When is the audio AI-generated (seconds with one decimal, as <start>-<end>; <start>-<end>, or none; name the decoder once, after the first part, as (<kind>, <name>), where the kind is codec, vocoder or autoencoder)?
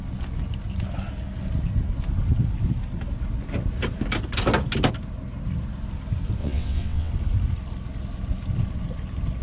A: 6.4-7.1 (vocoder, WaveNeXt)